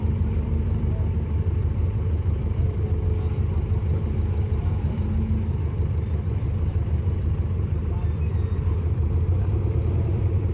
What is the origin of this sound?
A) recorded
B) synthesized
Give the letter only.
B